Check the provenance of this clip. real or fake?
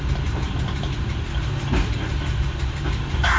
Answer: real